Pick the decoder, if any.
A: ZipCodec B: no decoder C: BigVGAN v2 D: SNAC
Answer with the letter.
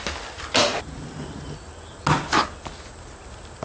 B